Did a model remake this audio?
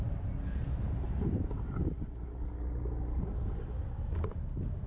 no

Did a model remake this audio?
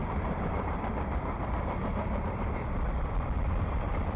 yes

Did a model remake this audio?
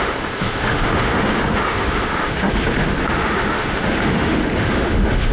yes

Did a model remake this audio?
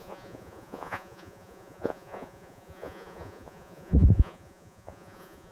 yes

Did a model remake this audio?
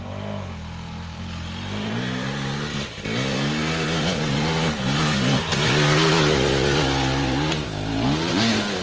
no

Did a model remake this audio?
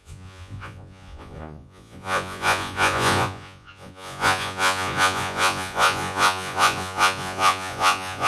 yes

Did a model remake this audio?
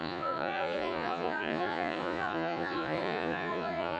yes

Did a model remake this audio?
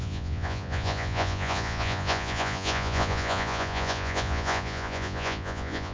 yes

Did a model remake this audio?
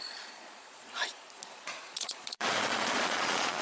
yes